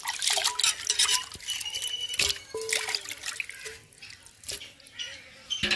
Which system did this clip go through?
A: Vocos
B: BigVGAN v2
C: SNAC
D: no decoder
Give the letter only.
D